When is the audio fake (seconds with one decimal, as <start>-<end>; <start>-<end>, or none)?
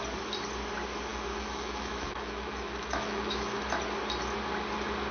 1.1-3.6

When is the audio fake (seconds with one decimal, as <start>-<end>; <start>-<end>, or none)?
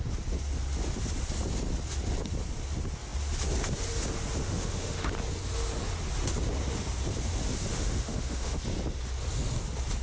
4.4-5.1; 7.7-8.6